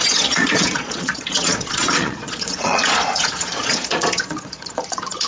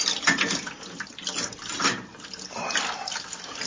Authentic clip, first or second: second